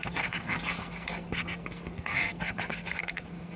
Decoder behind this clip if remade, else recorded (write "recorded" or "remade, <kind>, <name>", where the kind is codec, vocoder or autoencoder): remade, codec, SNAC